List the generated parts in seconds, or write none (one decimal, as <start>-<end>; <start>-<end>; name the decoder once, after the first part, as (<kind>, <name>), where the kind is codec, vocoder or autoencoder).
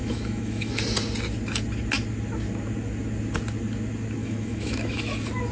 0.0-0.8 (autoencoder, DAC-VAE); 4.2-5.0